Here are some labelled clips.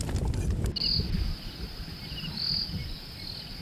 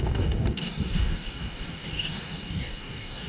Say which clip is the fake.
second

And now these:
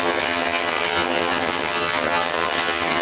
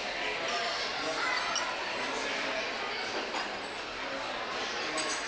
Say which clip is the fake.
first